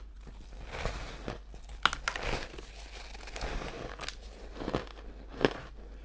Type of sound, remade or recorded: recorded